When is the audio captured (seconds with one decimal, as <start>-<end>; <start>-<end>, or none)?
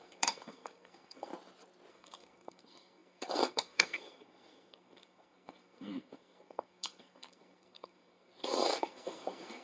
1.3-1.9